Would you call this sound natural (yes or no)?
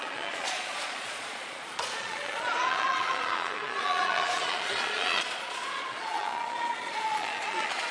no